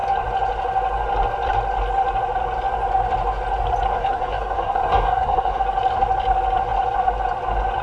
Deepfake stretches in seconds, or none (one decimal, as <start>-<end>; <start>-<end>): 4.0-5.6